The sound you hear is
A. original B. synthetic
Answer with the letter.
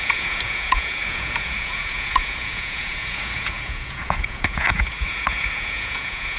B